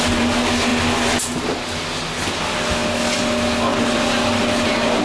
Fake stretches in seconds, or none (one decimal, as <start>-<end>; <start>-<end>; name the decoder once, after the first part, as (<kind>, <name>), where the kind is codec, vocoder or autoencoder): none